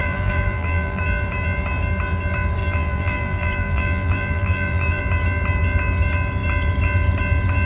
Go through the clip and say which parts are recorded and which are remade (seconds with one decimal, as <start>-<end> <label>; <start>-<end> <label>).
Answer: 0.0-1.0 remade; 1.0-2.6 recorded; 2.6-5.0 remade; 5.0-7.7 recorded